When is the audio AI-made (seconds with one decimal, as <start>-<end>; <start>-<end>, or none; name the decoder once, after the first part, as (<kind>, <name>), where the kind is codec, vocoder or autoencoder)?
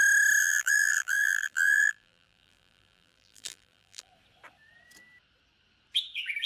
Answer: 0.4-4.1 (vocoder, BigVGAN v2)